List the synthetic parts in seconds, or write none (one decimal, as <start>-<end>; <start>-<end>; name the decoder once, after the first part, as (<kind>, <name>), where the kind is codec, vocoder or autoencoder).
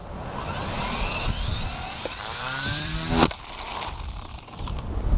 1.8-3.1 (vocoder, BigVGAN v2); 4.3-5.2